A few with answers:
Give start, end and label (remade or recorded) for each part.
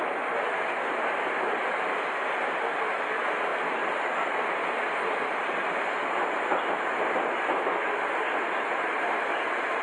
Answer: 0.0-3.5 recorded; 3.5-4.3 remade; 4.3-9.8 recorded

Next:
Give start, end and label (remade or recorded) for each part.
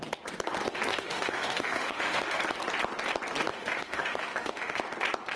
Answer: 0.0-0.9 recorded; 0.9-2.4 remade; 2.4-3.5 recorded; 3.5-4.8 remade; 4.8-5.4 recorded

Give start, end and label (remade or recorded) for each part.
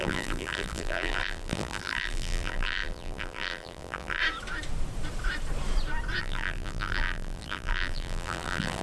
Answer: 0.0-4.2 remade; 4.2-6.2 recorded; 6.2-8.8 remade